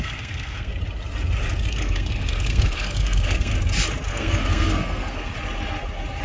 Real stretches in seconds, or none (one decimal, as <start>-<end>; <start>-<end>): 0.7-1.7; 3.5-4.1; 5.3-6.2